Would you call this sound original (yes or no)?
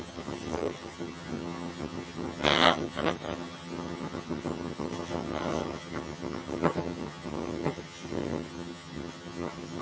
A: no